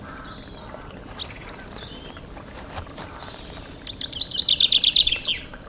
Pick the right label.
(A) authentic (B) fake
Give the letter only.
A